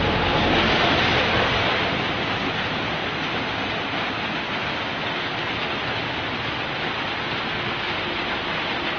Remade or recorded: recorded